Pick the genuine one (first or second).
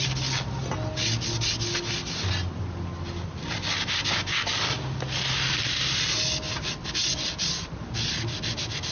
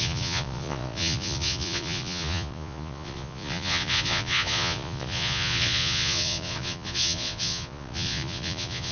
first